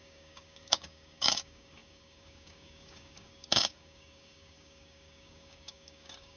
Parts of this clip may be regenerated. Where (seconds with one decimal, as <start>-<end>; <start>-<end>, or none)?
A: 0.0-6.4